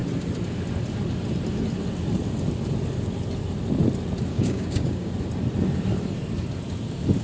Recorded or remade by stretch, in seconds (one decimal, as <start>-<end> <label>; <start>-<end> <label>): 0.0-4.3 recorded; 4.3-5.1 remade; 5.1-7.2 recorded